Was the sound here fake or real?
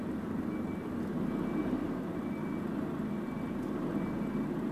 real